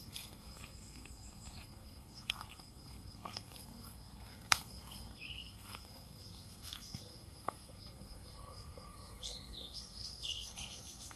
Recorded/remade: remade